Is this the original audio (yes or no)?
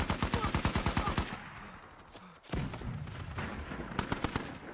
yes